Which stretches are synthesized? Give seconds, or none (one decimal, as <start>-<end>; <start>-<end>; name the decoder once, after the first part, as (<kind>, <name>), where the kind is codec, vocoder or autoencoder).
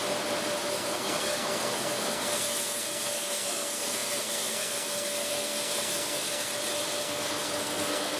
0.7-6.5 (codec, SNAC); 7.0-8.2